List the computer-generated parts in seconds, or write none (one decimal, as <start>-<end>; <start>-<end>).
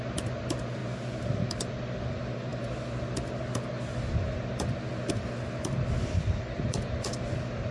none